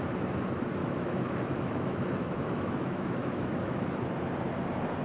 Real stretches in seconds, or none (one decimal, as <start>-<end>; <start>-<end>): 0.0-0.8; 3.8-5.0